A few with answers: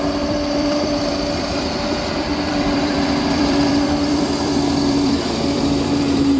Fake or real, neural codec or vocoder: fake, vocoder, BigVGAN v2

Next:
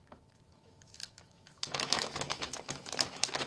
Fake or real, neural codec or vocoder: fake, autoencoder, DAC-VAE